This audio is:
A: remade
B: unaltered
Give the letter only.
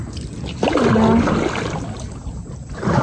B